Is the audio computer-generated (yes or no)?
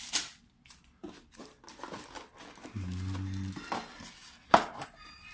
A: no